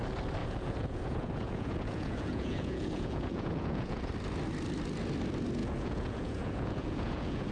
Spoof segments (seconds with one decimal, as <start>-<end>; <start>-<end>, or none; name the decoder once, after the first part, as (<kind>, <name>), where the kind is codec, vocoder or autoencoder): 0.4-4.1 (vocoder, Vocos); 5.6-7.5